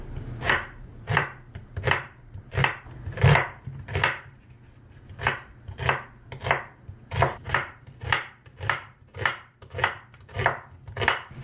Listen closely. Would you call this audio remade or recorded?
remade